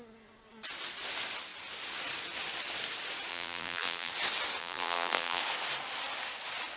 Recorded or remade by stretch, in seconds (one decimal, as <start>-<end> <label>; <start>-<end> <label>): 0.0-3.3 recorded; 3.3-4.1 remade; 4.1-4.6 recorded; 4.6-5.4 remade; 5.4-6.8 recorded